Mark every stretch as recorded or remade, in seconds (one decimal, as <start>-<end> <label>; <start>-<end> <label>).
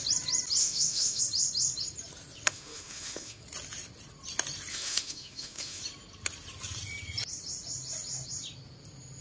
0.0-0.6 recorded; 0.6-1.2 remade; 1.2-2.5 recorded; 2.5-3.4 remade; 3.4-4.7 recorded; 4.7-5.8 remade; 5.8-9.2 recorded